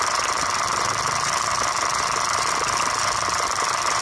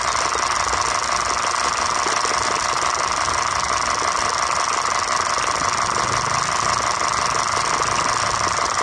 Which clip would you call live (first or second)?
second